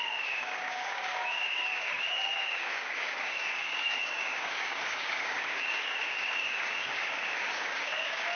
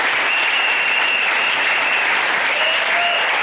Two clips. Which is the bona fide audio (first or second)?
second